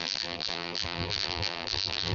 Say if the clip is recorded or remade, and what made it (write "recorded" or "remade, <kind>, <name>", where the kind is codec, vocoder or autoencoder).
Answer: remade, vocoder, BigVGAN v2